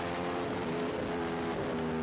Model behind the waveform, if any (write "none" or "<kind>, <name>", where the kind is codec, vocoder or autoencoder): none